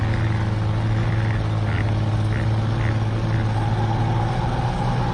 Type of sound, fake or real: real